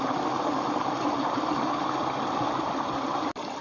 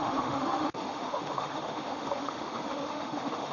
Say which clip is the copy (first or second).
second